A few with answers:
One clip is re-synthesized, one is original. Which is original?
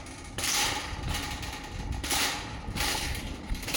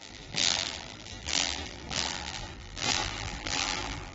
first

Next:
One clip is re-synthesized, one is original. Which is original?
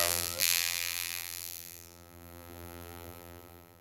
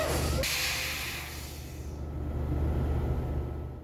second